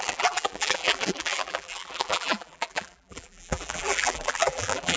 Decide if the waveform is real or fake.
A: fake